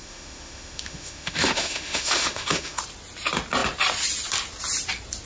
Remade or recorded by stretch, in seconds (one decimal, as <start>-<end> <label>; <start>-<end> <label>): 0.0-2.8 remade; 2.8-5.3 recorded